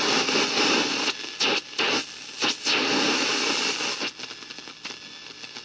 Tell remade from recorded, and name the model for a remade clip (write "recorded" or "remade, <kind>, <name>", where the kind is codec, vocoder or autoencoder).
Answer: recorded